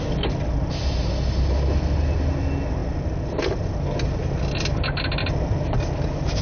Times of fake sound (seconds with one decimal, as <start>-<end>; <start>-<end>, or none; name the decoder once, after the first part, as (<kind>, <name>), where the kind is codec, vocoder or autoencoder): none